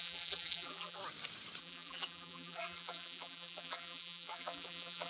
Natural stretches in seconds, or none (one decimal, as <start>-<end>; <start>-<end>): 1.0-1.6